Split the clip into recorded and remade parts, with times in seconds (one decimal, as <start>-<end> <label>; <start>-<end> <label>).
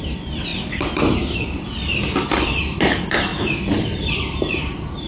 0.0-5.1 remade